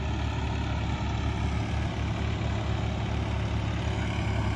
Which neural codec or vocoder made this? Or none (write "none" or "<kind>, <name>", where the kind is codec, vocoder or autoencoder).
none